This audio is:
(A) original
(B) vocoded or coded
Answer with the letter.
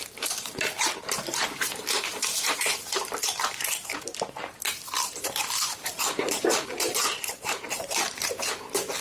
B